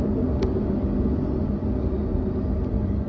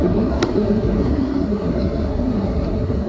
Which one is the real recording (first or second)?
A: first